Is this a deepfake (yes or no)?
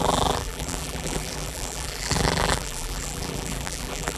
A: yes